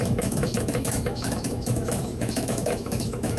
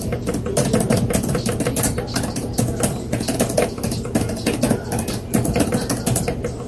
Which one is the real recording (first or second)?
second